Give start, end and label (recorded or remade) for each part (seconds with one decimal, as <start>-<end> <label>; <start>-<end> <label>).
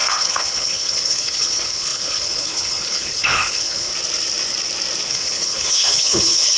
0.0-3.9 remade; 3.9-5.1 recorded; 5.1-6.6 remade